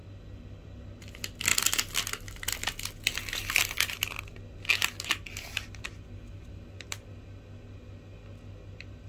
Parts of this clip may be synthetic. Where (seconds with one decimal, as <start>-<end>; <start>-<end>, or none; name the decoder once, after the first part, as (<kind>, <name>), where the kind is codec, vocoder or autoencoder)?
none